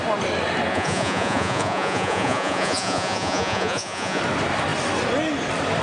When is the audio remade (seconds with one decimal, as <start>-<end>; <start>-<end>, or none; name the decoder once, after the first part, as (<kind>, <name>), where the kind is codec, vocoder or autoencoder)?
0.7-4.2 (vocoder, Vocos)